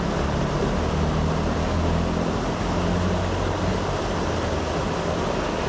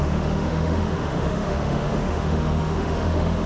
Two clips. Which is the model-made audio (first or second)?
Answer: second